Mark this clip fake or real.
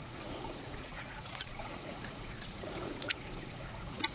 fake